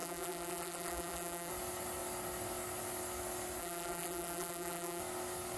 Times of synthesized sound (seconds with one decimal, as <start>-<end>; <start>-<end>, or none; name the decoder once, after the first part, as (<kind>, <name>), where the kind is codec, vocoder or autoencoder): 0.0-1.5 (vocoder, BigVGAN v2); 3.6-5.0